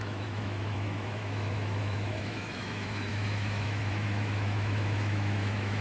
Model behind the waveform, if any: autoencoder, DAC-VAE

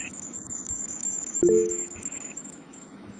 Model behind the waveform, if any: autoencoder, DAC-VAE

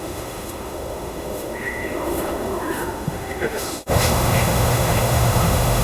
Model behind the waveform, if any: autoencoder, DAC-VAE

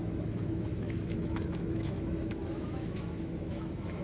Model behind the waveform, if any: autoencoder, DAC-VAE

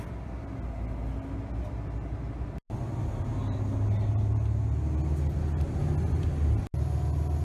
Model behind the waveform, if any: none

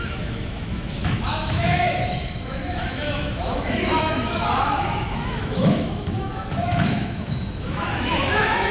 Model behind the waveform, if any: autoencoder, DAC-VAE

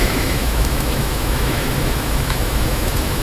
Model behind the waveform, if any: autoencoder, DAC-VAE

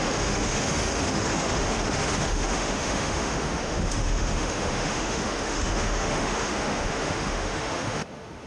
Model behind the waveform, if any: autoencoder, DAC-VAE